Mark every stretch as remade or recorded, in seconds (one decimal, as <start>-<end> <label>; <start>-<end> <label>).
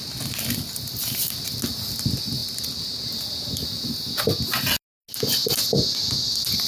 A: 0.0-6.7 recorded